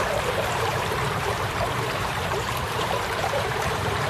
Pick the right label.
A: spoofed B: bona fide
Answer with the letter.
A